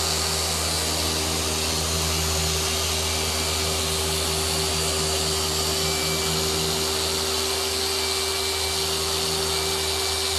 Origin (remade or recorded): recorded